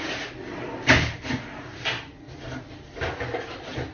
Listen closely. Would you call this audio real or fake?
real